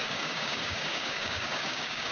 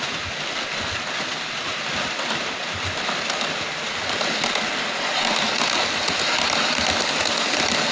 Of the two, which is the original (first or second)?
second